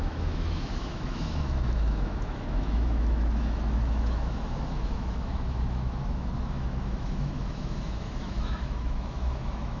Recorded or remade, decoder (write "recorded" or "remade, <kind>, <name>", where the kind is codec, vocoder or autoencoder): remade, autoencoder, DAC-VAE